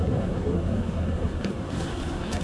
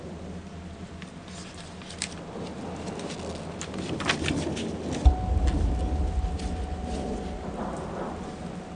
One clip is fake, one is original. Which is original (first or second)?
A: second